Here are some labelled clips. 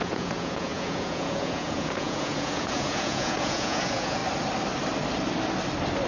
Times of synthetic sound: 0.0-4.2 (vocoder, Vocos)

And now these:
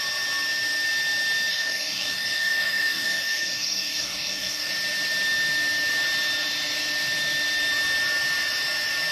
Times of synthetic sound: 1.5-4.7 (codec, DAC)

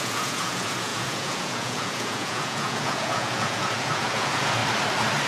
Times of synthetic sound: 0.0-4.6 (vocoder, Vocos)

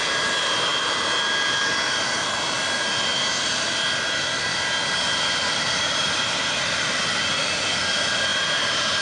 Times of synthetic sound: 0.0-0.7 (vocoder, BigVGAN v2); 1.8-9.0

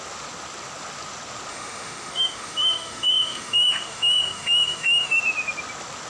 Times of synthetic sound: 1.5-5.2 (autoencoder, DAC-VAE)

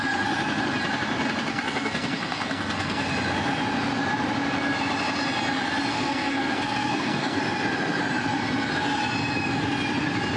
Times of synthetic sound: 1.5-3.1 (codec, SNAC); 5.9-7.4